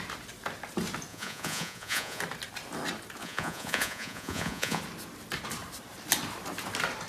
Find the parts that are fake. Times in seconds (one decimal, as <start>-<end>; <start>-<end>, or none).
1.1-2.2; 3.2-4.8